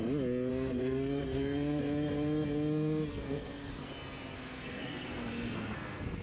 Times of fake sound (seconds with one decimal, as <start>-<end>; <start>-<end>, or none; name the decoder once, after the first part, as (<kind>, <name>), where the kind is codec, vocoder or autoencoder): 0.5-1.8 (codec, SNAC); 3.1-3.9; 4.3-6.2